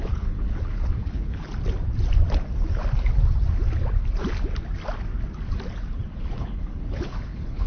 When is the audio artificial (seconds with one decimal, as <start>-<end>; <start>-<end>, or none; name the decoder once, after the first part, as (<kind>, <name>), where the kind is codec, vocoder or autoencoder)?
0.0-1.5 (codec, HILCodec); 6.1-7.7